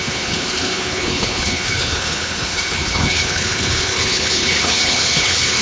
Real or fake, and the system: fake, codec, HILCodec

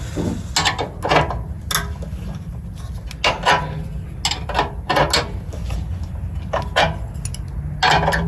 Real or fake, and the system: real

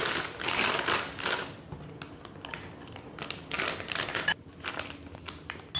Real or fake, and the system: real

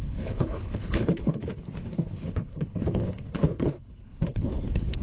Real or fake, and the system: fake, codec, HILCodec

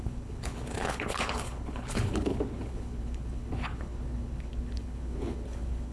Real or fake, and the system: fake, codec, HILCodec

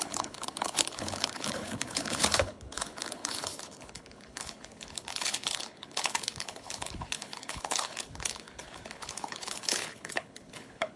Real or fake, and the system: fake, codec, HILCodec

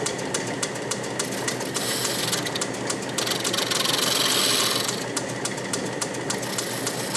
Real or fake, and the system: real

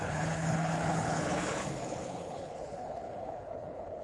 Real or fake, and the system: fake, codec, HILCodec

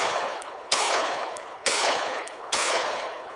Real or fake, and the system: fake, codec, HILCodec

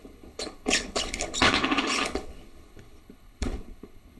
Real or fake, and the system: fake, codec, HILCodec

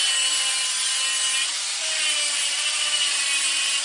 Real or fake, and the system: real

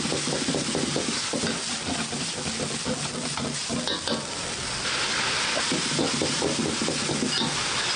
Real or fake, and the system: real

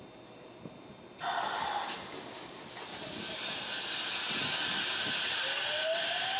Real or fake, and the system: real